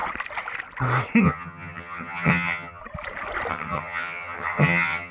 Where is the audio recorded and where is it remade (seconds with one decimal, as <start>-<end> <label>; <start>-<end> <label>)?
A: 0.0-1.2 recorded; 1.2-2.8 remade; 2.8-3.5 recorded; 3.5-5.1 remade